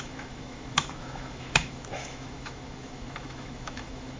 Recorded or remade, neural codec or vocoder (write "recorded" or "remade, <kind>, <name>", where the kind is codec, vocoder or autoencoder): remade, autoencoder, DAC-VAE